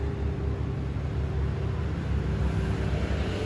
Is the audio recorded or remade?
recorded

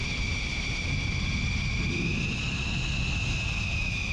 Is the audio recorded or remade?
recorded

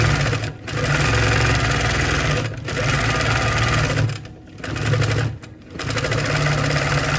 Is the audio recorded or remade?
recorded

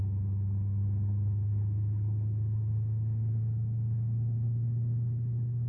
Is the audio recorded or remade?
remade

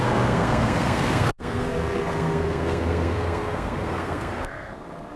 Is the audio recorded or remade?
remade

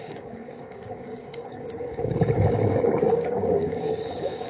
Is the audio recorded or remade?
remade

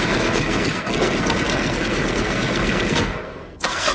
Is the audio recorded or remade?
remade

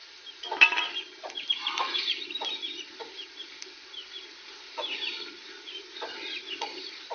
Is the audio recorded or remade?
recorded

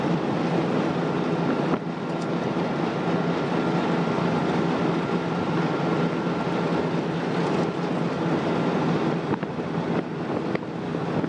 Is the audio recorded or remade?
recorded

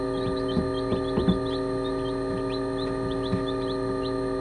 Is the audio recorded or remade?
recorded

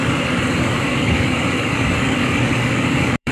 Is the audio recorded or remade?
remade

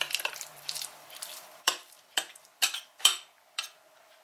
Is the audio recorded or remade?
remade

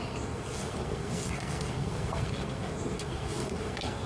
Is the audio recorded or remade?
remade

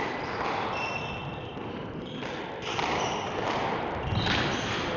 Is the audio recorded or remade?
recorded